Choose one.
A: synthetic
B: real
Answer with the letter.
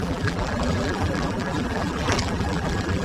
A